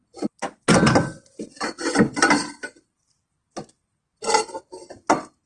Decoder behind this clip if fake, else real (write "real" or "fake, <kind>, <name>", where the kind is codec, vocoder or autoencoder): real